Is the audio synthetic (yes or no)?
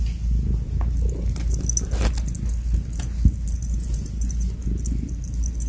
no